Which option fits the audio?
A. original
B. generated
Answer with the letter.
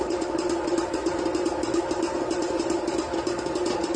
A